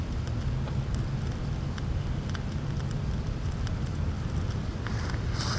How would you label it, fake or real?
real